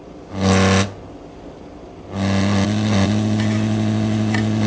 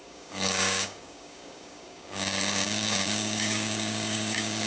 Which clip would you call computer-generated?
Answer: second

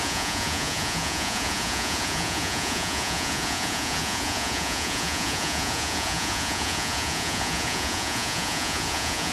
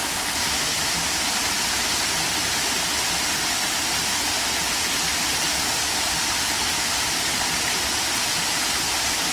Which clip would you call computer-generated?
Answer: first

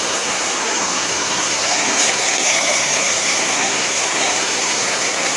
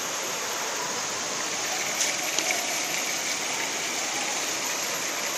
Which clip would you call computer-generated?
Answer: first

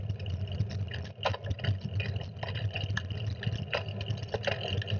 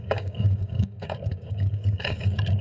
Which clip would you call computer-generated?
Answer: second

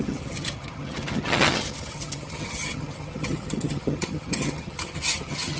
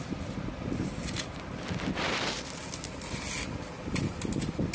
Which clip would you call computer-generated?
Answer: first